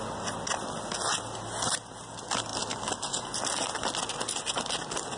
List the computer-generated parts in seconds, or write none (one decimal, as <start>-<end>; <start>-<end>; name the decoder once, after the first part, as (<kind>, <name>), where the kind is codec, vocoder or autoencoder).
none